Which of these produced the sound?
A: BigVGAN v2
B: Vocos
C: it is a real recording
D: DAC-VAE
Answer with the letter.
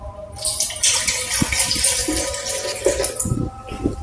C